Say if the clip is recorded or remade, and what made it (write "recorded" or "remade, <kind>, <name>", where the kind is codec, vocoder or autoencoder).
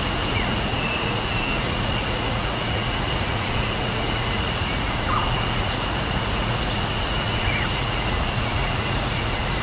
remade, vocoder, Vocos